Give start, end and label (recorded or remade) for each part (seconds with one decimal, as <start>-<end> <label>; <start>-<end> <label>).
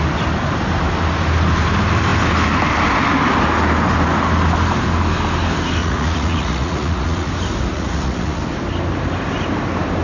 0.0-5.8 recorded; 5.8-7.3 remade; 7.3-7.7 recorded; 7.7-8.4 remade; 8.4-10.0 recorded